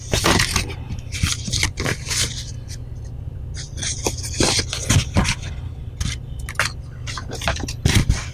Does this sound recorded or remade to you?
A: recorded